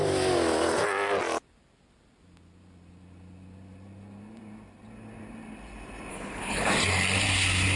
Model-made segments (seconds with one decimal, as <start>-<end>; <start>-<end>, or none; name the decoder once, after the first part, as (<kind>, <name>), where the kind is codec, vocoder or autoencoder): 6.1-6.7 (codec, HILCodec)